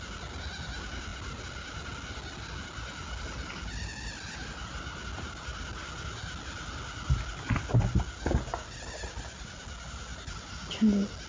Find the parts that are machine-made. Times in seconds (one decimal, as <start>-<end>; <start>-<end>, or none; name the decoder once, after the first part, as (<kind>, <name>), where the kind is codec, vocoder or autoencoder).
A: none